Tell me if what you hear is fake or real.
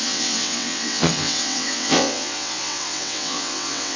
fake